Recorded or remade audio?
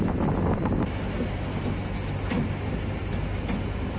recorded